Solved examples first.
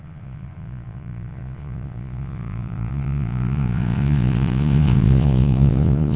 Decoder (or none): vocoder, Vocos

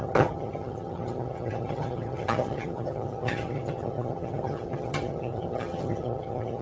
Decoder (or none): vocoder, HiFi-GAN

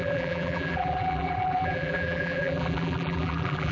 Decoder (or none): vocoder, BigVGAN v2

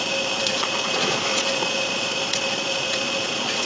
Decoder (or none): vocoder, Vocos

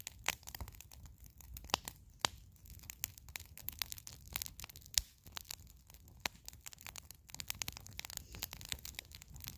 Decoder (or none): none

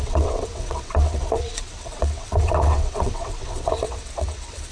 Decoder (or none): vocoder, WaveNeXt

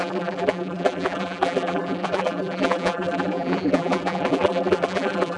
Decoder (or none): vocoder, BigVGAN v2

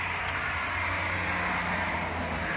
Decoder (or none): none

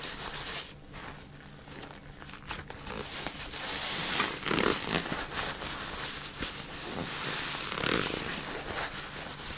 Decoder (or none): none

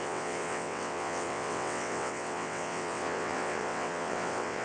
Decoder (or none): vocoder, WaveNeXt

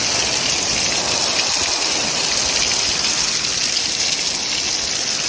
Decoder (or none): none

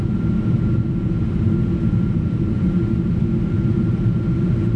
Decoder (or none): none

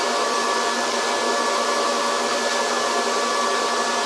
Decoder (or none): none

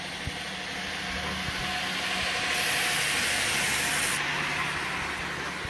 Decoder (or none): none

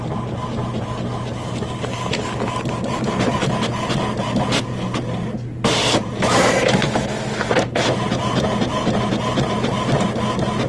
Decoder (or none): none